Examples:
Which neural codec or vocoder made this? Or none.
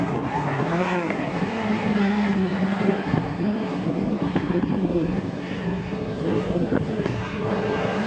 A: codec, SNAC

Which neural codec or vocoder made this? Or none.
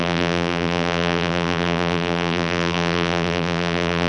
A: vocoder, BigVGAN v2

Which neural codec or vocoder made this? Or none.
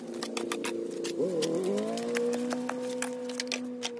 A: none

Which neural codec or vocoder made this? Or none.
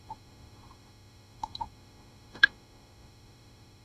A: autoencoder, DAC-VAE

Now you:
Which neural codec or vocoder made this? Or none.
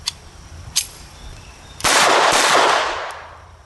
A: vocoder, BigVGAN v2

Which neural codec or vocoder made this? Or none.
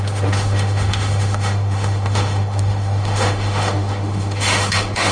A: autoencoder, DAC-VAE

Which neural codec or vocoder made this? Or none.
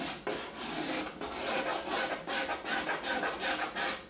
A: none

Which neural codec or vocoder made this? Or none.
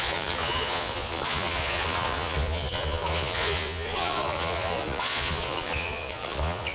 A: vocoder, Vocos